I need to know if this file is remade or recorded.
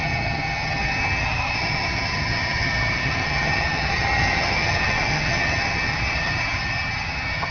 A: remade